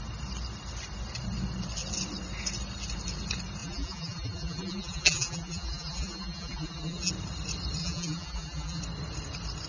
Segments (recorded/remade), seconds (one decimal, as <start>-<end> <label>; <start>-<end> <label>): 0.0-3.6 recorded; 3.6-7.1 remade; 7.1-7.8 recorded; 7.8-8.8 remade; 8.8-9.7 recorded